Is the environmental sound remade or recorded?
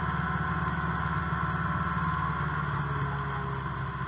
recorded